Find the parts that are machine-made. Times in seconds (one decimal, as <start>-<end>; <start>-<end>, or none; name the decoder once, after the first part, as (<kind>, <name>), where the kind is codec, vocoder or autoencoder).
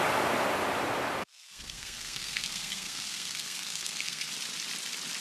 1.2-4.3 (codec, SNAC)